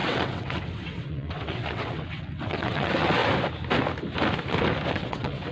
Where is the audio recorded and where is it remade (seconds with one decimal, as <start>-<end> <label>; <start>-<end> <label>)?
0.0-3.2 remade; 3.2-4.9 recorded; 4.9-5.5 remade